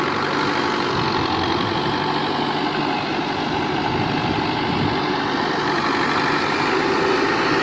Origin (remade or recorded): recorded